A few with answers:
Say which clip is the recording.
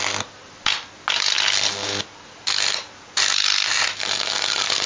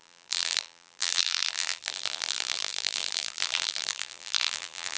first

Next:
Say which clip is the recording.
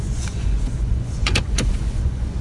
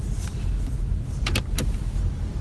second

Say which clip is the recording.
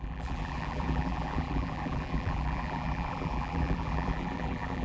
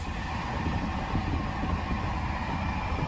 second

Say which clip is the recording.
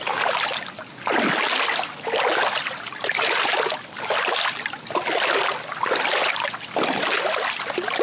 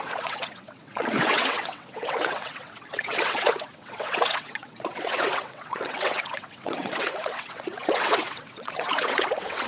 first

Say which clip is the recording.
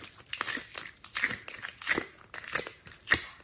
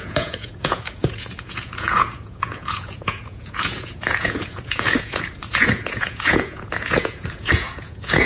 first